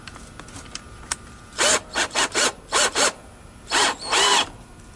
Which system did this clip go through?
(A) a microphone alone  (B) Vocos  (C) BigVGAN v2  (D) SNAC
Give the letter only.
A